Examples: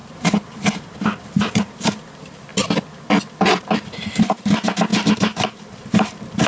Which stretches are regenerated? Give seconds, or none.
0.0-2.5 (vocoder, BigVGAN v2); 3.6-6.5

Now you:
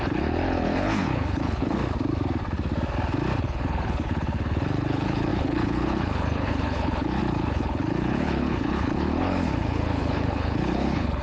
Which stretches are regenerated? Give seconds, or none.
0.0-1.8 (codec, HILCodec); 3.4-11.2

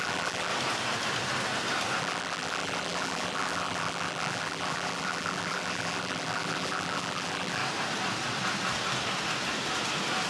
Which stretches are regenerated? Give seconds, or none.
0.0-0.5 (vocoder, BigVGAN v2); 2.0-7.6

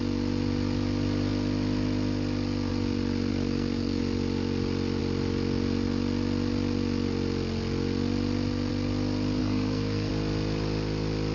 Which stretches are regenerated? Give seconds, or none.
3.3-4.0 (codec, SNAC); 9.4-10.1